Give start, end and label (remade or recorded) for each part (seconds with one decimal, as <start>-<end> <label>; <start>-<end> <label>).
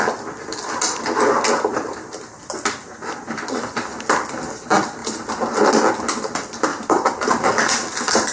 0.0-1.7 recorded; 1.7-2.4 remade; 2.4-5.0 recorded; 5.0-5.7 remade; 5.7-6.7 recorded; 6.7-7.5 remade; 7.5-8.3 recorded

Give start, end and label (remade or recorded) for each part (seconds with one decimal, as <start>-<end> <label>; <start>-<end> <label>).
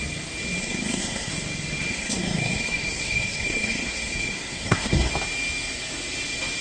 0.0-0.6 recorded; 0.6-1.3 remade; 1.3-1.9 recorded; 1.9-5.1 remade; 5.1-6.6 recorded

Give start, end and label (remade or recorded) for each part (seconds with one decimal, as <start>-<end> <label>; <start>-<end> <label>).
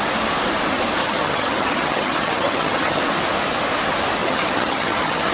0.0-1.0 recorded; 1.0-3.0 remade; 3.0-4.2 recorded; 4.2-5.3 remade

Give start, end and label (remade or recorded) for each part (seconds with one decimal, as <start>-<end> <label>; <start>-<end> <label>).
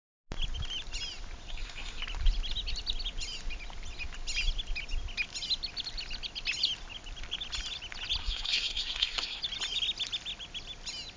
0.0-1.5 recorded; 1.5-2.0 remade; 2.0-8.2 recorded; 8.2-9.4 remade; 9.4-11.2 recorded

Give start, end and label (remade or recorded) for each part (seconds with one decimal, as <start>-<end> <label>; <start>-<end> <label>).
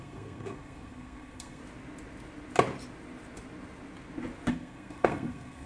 0.0-1.6 remade; 1.6-4.5 recorded; 4.5-5.7 remade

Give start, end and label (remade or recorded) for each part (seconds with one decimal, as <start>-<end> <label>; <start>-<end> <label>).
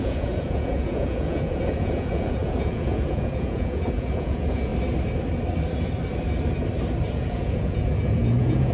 0.0-4.7 remade; 4.7-7.1 recorded; 7.1-8.7 remade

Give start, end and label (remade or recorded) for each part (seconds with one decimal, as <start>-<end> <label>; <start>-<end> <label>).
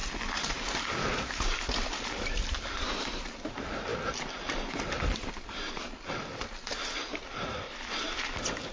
0.0-8.7 recorded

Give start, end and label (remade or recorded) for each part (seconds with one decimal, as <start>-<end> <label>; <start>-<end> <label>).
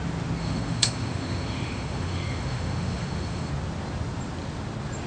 0.0-0.4 recorded; 0.4-3.5 remade; 3.5-5.1 recorded